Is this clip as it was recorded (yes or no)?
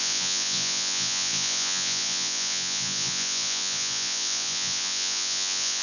no